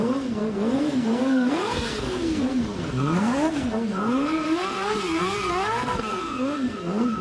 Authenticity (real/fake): fake